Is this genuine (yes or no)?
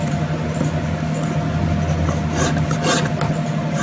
yes